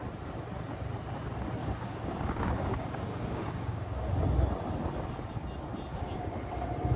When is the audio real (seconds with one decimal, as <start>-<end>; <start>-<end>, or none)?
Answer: 0.0-1.6; 4.2-5.9; 6.5-7.0